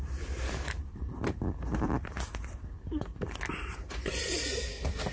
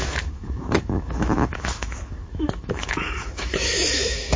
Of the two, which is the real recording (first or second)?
first